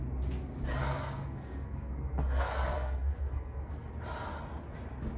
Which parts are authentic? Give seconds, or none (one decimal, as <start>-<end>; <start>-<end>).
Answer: 0.0-0.8; 3.9-5.2

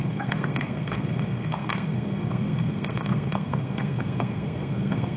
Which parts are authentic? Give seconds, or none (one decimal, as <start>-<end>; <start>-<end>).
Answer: none

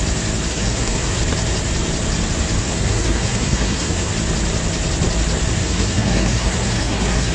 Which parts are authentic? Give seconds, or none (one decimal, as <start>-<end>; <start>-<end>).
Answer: 0.0-0.5; 1.2-2.6; 4.1-5.6

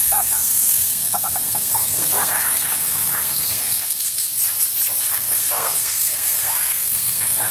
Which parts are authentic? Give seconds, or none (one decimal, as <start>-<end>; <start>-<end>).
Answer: 4.3-5.0

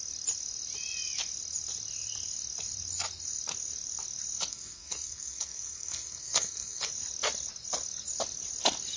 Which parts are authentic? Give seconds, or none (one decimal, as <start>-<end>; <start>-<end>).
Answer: 0.0-4.5; 6.9-9.0

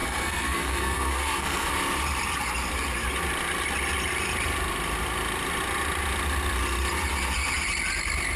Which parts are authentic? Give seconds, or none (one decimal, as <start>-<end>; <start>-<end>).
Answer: 1.7-8.4

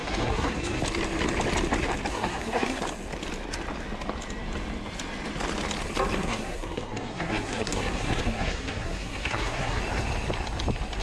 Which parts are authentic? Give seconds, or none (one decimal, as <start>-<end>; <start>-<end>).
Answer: 0.8-2.1; 2.8-6.2; 9.8-11.0